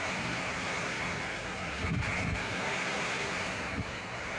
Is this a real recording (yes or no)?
no